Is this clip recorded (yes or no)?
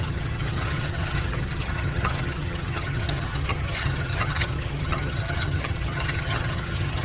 no